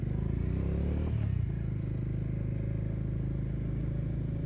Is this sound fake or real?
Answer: real